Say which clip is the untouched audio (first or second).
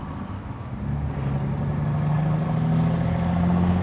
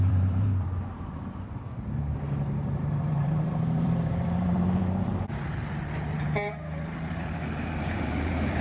first